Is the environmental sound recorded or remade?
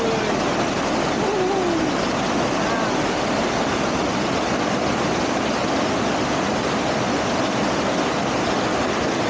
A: recorded